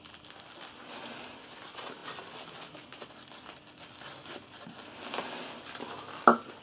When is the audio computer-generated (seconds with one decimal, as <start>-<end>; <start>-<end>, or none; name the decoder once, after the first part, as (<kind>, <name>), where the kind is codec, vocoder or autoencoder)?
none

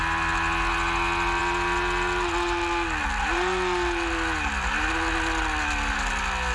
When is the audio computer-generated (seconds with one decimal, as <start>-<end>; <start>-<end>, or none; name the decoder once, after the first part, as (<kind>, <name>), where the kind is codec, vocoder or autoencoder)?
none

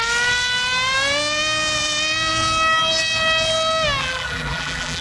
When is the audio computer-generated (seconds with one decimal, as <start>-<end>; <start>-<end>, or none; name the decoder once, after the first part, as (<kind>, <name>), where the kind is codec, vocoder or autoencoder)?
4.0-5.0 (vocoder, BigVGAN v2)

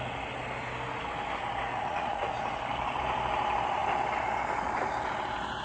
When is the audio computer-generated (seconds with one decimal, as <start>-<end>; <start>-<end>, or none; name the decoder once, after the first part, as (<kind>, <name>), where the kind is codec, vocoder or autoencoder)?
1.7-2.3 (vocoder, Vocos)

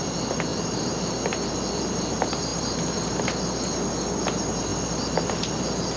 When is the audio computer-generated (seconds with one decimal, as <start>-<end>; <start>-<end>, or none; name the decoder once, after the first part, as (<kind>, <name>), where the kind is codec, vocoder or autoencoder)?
none